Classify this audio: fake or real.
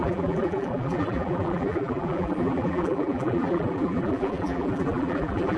fake